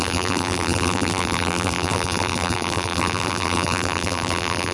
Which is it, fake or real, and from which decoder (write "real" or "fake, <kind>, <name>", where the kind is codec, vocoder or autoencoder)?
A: fake, vocoder, BigVGAN v2